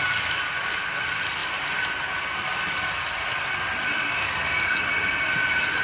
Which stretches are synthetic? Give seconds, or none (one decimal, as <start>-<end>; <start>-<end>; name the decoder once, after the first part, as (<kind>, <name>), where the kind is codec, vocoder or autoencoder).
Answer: none